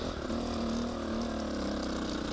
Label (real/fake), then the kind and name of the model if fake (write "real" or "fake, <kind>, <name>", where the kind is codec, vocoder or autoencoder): real